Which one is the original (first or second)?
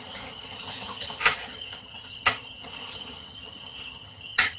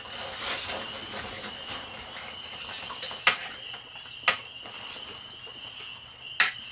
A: second